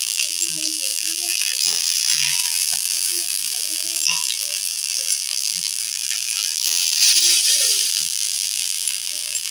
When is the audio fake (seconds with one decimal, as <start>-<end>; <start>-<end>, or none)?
0.0-7.0; 7.9-9.5